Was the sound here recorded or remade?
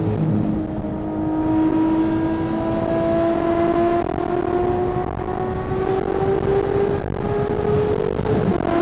recorded